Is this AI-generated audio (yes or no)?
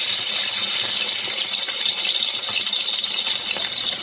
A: no